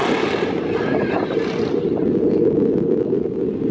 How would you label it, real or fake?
real